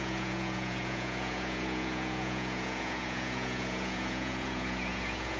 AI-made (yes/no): yes